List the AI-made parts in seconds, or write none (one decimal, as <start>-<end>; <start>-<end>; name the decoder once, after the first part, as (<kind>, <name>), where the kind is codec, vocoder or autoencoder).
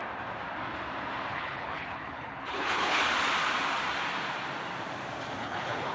1.3-3.0 (codec, HILCodec); 5.4-5.9